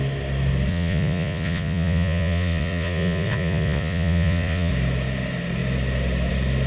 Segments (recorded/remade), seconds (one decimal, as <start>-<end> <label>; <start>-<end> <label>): 0.0-0.7 recorded; 0.7-4.7 remade; 4.7-6.7 recorded